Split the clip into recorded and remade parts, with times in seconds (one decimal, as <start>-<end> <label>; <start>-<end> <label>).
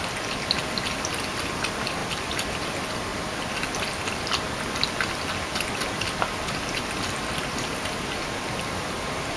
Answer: 0.0-9.4 recorded